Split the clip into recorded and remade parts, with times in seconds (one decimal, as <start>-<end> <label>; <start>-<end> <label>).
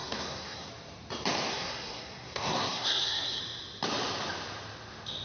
0.0-0.7 remade; 0.7-1.5 recorded; 1.5-3.4 remade; 3.4-5.2 recorded